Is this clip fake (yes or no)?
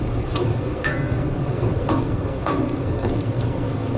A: yes